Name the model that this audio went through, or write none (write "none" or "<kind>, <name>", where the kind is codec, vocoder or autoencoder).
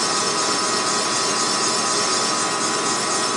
none